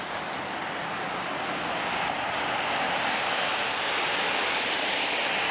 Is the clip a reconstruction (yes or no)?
no